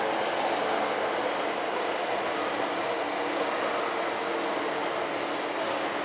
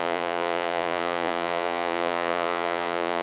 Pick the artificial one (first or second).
second